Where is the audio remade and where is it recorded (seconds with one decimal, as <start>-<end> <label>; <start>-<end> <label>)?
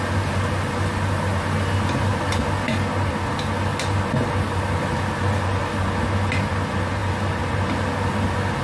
0.0-8.6 recorded